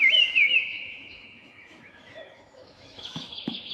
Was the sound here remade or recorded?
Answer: remade